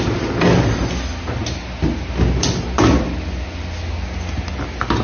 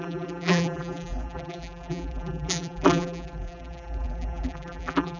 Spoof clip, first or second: second